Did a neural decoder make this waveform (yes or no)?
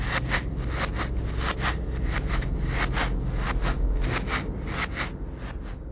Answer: no